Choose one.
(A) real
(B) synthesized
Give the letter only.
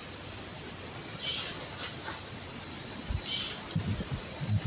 A